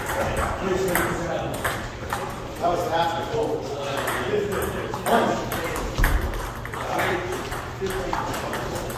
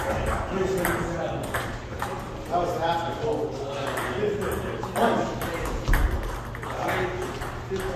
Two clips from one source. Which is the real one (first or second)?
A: second